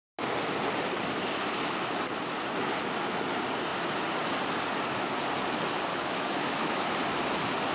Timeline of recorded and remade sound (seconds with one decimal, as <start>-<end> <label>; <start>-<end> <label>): 0.0-5.9 recorded; 5.9-6.9 remade; 6.9-7.7 recorded

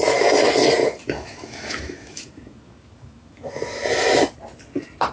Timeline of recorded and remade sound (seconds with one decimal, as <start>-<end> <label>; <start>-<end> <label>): 0.0-0.8 recorded; 0.8-3.5 remade; 3.5-5.1 recorded

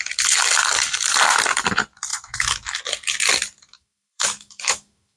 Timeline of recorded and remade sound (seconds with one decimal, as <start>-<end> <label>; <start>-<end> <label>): 0.0-2.1 recorded; 2.1-2.8 remade; 2.8-3.7 recorded; 3.7-5.2 remade

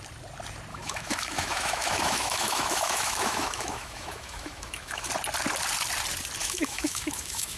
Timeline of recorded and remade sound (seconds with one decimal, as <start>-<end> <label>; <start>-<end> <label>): 0.0-0.7 recorded; 0.7-5.1 remade; 5.1-6.4 recorded; 6.4-7.6 remade